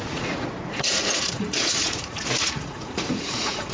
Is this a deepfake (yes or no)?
yes